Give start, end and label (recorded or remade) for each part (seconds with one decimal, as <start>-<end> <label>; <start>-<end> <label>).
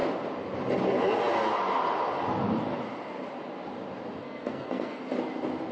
0.0-4.2 recorded; 4.2-5.0 remade; 5.0-5.7 recorded